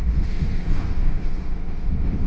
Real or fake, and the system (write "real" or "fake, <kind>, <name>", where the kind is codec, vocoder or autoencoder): fake, autoencoder, DAC-VAE